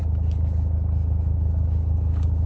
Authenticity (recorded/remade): recorded